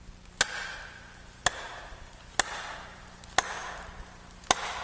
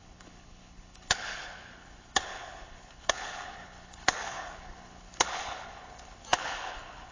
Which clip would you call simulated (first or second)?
second